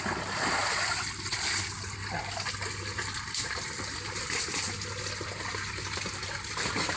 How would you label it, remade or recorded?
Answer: recorded